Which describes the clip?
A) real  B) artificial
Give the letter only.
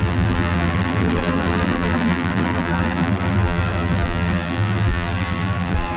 B